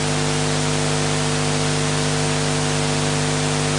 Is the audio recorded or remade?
recorded